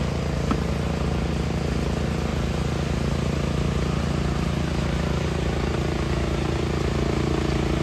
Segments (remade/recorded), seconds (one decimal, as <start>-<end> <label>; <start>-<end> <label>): 0.0-7.8 recorded